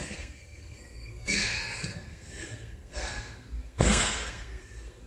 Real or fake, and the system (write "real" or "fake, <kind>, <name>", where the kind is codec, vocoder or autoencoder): fake, codec, SNAC